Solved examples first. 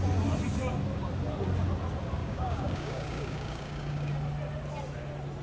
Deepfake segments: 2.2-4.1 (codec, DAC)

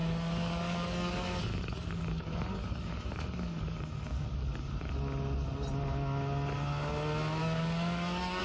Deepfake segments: 0.0-4.9 (codec, DAC); 7.4-8.4

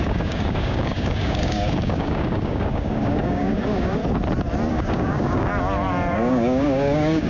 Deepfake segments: 0.0-4.0 (codec, DAC); 4.7-5.5; 6.1-7.3

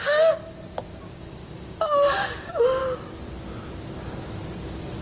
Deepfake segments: 0.0-0.4 (codec, DAC); 1.1-2.8

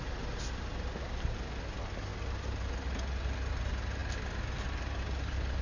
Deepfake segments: none

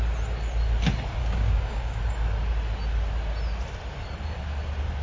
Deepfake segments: 1.2-2.0 (codec, DAC)

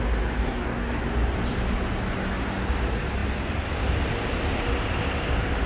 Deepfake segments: 0.4-1.0 (codec, DAC)